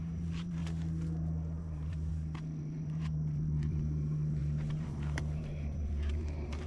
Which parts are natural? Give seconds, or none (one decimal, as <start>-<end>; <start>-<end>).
0.6-1.6; 2.1-2.6